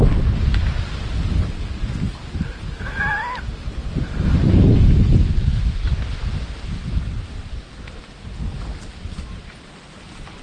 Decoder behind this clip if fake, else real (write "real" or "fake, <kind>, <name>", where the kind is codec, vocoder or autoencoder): real